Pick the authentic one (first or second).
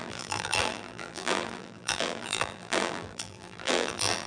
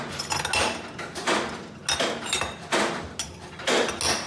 second